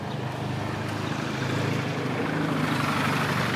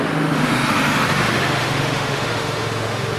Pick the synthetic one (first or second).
second